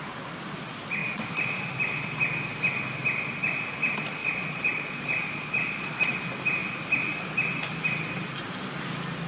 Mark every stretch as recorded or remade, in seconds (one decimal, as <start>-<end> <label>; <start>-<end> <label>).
0.0-4.2 recorded; 4.2-6.1 remade; 6.1-9.3 recorded